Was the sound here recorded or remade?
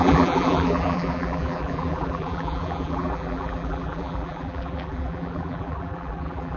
remade